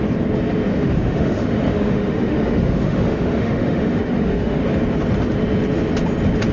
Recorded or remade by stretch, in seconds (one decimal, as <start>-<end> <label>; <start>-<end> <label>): 0.0-0.7 recorded; 0.7-4.6 remade; 4.6-6.5 recorded